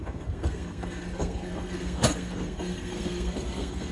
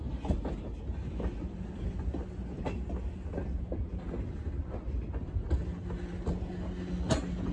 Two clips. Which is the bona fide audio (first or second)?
second